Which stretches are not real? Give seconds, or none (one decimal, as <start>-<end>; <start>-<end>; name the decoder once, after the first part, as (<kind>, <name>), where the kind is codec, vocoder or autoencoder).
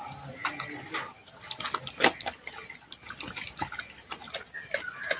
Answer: none